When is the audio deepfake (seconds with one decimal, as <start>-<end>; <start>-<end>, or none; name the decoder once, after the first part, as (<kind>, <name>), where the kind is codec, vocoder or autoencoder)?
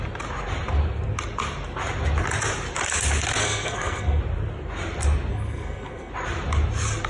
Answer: 3.4-4.2 (codec, SNAC); 5.3-6.1